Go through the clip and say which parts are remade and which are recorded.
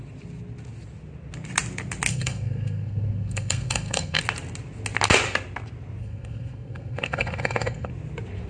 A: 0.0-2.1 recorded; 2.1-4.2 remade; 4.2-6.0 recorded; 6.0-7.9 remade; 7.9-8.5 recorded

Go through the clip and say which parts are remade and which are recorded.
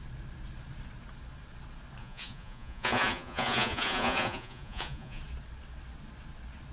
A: 0.0-2.0 recorded; 2.0-5.2 remade; 5.2-6.7 recorded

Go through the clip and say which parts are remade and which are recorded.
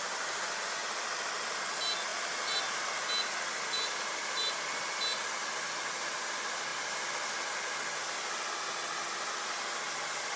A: 0.0-0.8 recorded; 0.8-1.6 remade; 1.6-2.1 recorded; 2.1-2.8 remade; 2.8-10.4 recorded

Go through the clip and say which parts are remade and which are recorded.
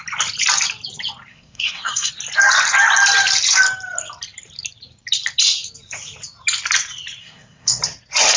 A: 0.0-1.3 recorded; 1.3-2.1 remade; 2.1-7.2 recorded; 7.2-7.8 remade; 7.8-8.4 recorded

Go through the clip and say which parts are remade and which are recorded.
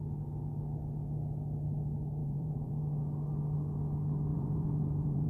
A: 0.0-2.2 recorded; 2.2-2.8 remade; 2.8-4.3 recorded; 4.3-5.3 remade